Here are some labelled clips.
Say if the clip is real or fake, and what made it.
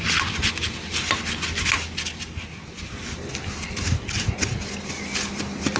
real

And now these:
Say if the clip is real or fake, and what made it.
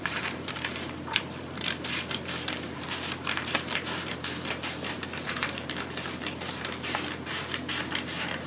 fake, vocoder, BigVGAN v2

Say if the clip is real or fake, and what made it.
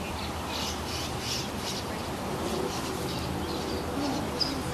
real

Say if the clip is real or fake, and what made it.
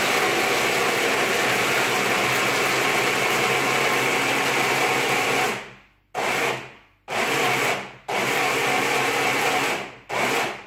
real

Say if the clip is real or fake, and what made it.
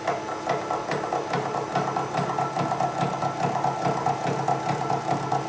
real